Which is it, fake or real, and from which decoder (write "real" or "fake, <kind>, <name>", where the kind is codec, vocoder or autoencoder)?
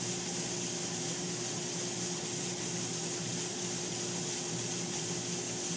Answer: real